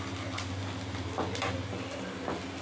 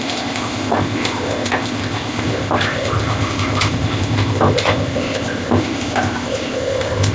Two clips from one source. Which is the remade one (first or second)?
second